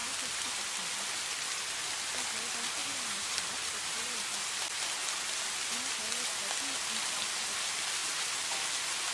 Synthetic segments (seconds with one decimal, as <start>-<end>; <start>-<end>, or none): 2.8-4.7; 8.0-8.7